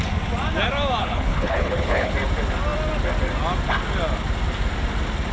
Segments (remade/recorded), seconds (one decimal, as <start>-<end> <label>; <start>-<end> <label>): 0.0-1.0 recorded; 1.0-2.1 remade; 2.1-5.3 recorded

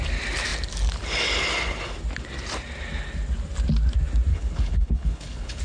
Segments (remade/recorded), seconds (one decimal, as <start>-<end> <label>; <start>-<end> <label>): 0.0-4.3 recorded; 4.3-5.6 remade

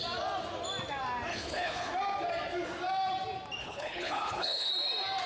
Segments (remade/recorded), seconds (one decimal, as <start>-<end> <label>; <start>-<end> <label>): 0.0-1.3 recorded; 1.3-1.9 remade; 1.9-3.6 recorded; 3.6-4.7 remade; 4.7-5.3 recorded

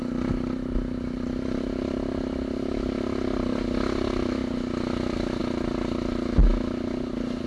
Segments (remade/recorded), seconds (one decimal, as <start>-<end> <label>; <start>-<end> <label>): 0.0-7.5 recorded